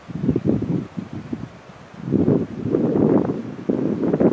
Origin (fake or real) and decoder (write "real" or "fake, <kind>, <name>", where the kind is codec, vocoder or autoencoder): real